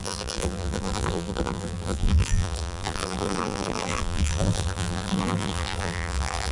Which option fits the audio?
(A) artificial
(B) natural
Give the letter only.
A